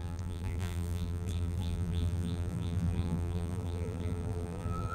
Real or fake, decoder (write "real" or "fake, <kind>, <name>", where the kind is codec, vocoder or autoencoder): fake, vocoder, BigVGAN v2